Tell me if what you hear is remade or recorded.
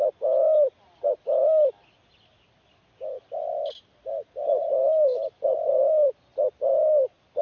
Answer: recorded